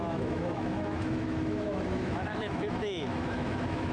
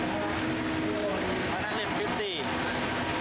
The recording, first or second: second